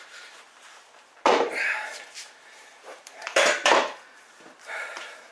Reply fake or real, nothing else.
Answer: fake